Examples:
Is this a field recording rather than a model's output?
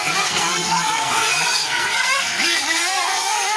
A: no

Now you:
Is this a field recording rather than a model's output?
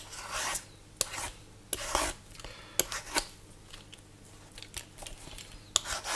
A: yes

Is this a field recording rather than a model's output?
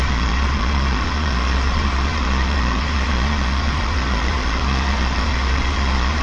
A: no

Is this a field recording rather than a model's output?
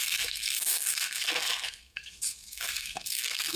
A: no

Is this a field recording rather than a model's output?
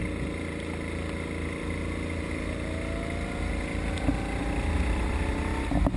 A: yes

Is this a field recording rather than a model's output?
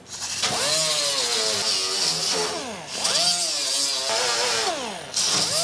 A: yes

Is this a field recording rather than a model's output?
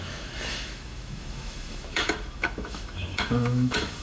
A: no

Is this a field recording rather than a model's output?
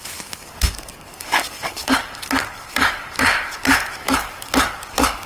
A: no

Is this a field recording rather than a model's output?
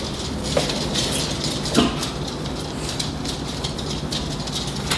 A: yes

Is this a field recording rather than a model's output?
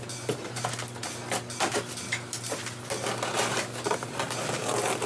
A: yes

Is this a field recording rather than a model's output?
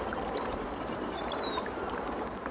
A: no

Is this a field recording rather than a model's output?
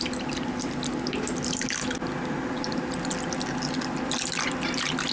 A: yes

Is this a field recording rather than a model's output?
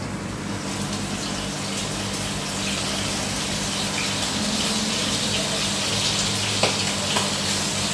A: yes